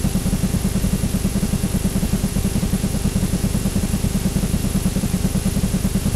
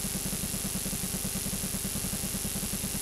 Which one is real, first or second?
second